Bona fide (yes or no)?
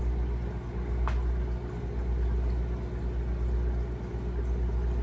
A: yes